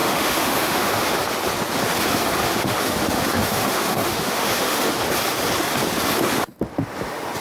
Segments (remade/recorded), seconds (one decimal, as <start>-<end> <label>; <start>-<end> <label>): 0.0-1.2 remade; 1.2-2.4 recorded; 2.4-5.0 remade; 5.0-7.4 recorded